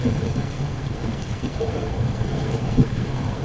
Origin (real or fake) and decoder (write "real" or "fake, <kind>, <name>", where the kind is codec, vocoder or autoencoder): fake, codec, SNAC